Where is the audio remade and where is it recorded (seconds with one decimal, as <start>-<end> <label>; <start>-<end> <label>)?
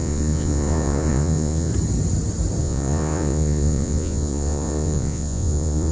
0.0-1.7 remade; 1.7-2.6 recorded; 2.6-5.9 remade